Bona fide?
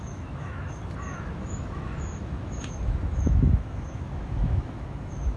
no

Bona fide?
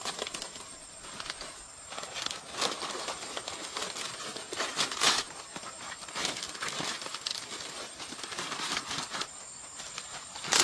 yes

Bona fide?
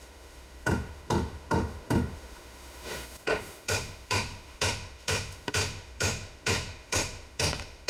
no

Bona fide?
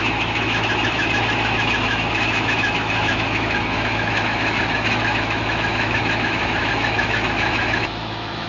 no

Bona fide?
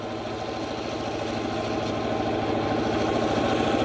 yes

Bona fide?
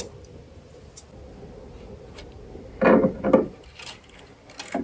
yes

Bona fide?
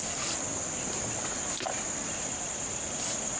yes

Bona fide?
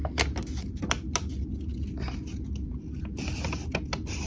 yes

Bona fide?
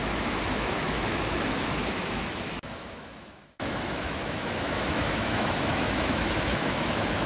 no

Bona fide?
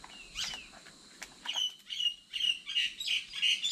yes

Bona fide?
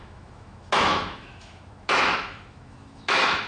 no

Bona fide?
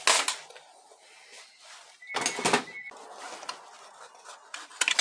yes